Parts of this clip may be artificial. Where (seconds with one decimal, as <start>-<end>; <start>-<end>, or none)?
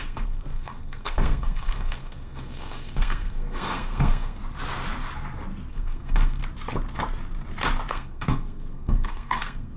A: 0.0-4.4; 5.7-6.4; 7.9-9.8